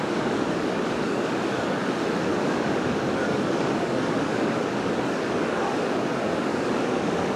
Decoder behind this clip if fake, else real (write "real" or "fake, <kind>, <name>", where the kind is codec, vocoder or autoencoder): fake, codec, DAC